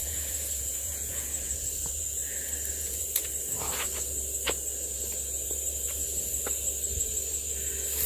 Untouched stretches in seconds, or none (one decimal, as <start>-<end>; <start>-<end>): 2.2-2.7; 3.2-8.1